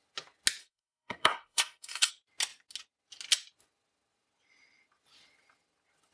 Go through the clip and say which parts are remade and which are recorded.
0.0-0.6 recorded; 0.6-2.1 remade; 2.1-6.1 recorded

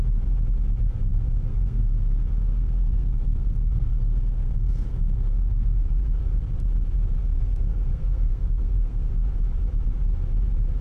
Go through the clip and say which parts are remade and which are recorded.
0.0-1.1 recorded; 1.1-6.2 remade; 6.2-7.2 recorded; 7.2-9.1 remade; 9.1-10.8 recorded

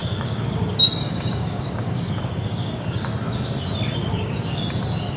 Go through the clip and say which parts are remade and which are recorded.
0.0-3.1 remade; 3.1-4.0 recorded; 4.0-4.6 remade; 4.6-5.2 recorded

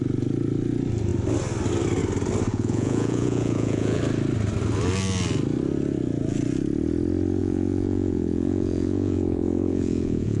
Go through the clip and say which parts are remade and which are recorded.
0.0-2.5 recorded; 2.5-4.0 remade; 4.0-7.4 recorded; 7.4-10.4 remade

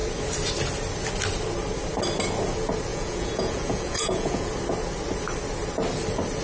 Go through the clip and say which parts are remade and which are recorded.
0.0-2.9 recorded; 2.9-4.5 remade; 4.5-6.4 recorded

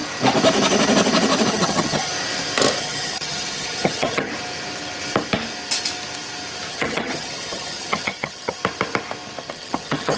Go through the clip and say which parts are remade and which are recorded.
0.0-1.5 recorded; 1.5-2.1 remade; 2.1-2.8 recorded; 2.8-4.3 remade; 4.3-6.7 recorded; 6.7-8.6 remade; 8.6-9.4 recorded; 9.4-10.2 remade